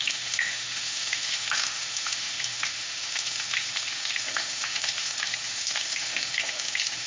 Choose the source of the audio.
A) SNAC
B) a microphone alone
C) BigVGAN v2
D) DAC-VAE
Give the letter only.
D